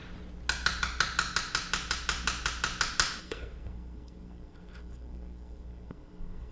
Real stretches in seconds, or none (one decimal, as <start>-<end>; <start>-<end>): 0.0-3.2